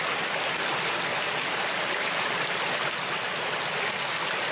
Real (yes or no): yes